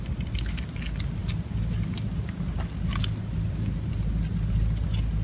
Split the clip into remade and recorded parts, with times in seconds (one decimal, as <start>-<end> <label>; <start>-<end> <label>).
0.0-5.2 recorded